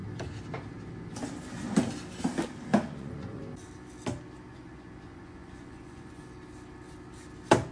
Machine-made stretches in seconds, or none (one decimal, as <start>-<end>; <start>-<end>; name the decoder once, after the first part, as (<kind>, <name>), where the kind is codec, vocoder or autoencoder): 2.7-3.4 (vocoder, Vocos); 4.5-6.2